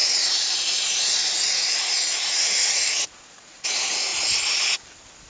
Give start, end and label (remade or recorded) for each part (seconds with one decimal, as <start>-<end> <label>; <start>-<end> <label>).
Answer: 0.0-4.1 remade; 4.1-5.3 recorded